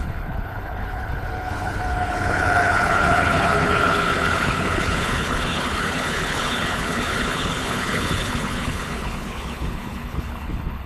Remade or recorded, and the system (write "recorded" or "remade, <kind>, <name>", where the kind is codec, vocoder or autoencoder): remade, codec, HILCodec